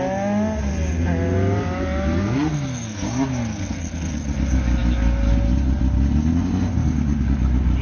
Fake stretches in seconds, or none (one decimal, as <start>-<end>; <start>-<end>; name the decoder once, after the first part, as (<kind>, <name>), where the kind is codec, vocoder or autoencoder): none

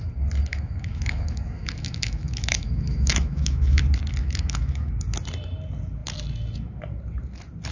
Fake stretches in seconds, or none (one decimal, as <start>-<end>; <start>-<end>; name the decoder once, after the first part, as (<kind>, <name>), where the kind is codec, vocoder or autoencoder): 0.5-3.8 (autoencoder, DAC-VAE); 4.2-4.9

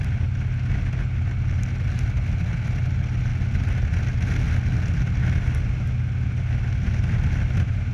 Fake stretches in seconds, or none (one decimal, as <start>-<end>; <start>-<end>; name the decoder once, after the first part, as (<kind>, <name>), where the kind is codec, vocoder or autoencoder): none

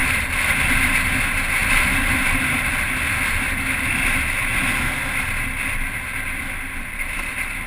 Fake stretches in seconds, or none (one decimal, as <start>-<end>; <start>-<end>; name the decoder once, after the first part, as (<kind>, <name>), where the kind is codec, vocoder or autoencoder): 0.0-0.6 (vocoder, BigVGAN v2); 1.6-2.7

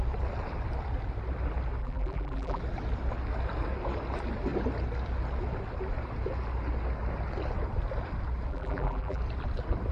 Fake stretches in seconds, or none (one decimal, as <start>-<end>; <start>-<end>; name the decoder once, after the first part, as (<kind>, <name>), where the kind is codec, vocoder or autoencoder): 1.8-2.6 (vocoder, BigVGAN v2); 8.5-9.2

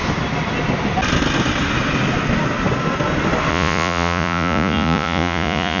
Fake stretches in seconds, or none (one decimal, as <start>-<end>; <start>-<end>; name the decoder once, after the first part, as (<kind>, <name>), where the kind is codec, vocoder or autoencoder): 3.5-5.8 (vocoder, Vocos)

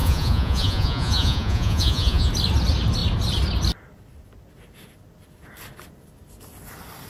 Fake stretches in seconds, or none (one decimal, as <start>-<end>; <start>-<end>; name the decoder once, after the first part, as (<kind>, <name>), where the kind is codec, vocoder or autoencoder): 0.0-2.3 (vocoder, Vocos)